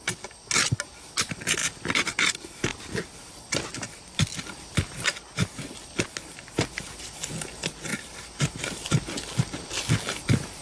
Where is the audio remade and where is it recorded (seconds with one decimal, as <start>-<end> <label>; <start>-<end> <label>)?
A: 0.0-7.9 recorded; 7.9-8.4 remade; 8.4-10.6 recorded